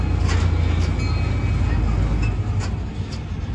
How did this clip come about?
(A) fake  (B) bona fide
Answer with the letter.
B